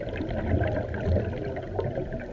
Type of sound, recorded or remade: recorded